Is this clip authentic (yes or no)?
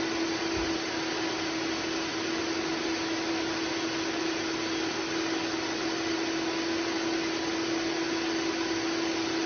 yes